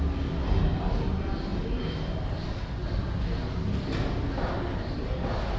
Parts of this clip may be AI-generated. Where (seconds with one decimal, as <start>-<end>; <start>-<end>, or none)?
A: none